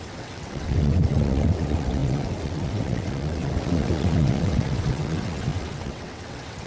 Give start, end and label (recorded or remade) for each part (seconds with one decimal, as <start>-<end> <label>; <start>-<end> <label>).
0.0-6.7 remade